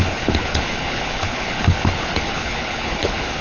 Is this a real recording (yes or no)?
no